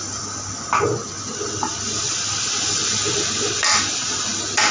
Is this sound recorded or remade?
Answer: recorded